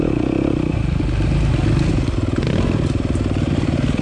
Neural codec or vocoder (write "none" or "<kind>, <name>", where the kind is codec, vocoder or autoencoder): none